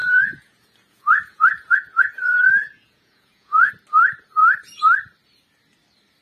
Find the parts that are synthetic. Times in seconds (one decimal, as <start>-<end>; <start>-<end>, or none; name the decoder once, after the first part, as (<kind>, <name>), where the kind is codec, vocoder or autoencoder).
0.0-3.7 (vocoder, Vocos)